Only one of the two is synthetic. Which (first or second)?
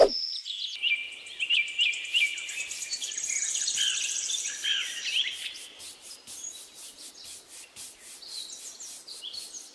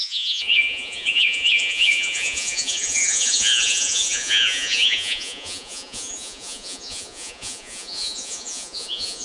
second